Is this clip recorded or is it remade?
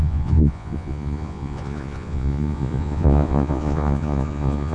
remade